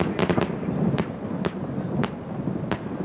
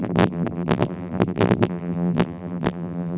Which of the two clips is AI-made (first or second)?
second